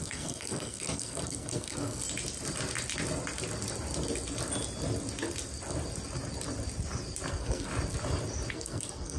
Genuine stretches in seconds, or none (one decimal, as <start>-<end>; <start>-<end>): 2.0-7.3; 7.7-8.5